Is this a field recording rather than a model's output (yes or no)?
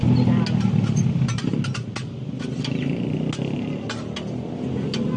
yes